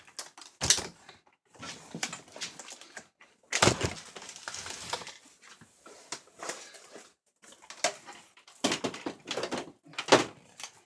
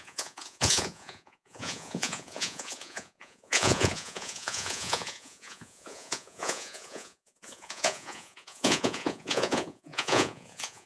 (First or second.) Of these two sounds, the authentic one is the first